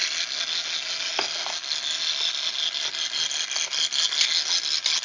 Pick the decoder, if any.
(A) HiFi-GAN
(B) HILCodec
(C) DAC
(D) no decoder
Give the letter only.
D